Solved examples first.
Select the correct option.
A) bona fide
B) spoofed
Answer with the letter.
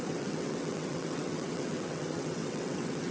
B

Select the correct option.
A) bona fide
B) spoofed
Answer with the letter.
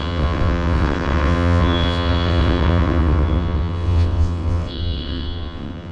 B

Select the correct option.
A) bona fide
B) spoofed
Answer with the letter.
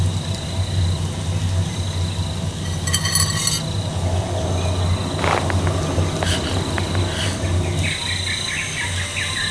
A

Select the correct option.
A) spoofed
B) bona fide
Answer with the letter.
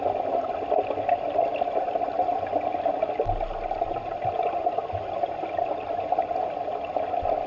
B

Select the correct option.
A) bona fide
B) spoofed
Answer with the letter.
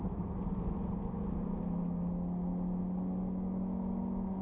A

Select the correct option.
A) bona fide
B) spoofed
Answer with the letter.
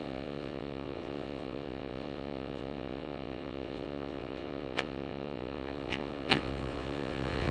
B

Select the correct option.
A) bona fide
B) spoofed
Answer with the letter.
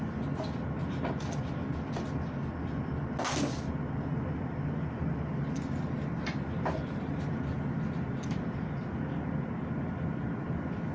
A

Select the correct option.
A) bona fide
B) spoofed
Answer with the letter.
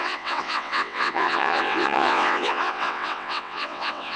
B